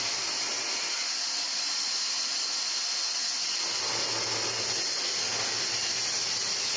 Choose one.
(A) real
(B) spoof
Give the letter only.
A